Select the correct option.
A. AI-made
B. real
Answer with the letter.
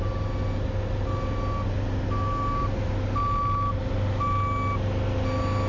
B